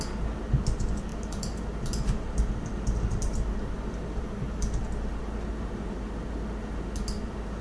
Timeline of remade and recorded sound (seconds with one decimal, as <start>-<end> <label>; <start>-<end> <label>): 0.0-7.6 recorded